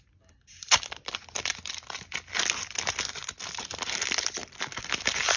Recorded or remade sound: recorded